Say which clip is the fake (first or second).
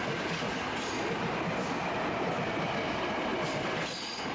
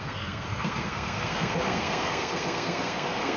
second